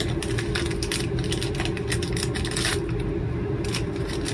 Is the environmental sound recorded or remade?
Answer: recorded